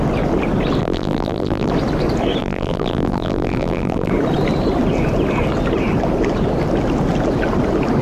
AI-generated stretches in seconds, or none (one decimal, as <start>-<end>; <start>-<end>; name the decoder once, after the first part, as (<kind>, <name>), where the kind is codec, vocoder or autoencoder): 0.8-1.7 (vocoder, BigVGAN v2); 2.4-4.1